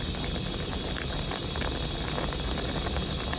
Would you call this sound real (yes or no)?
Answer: yes